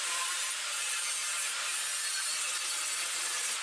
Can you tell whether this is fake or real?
real